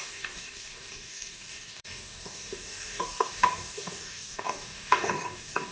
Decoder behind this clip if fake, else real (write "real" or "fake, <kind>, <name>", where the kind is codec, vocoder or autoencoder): fake, codec, DAC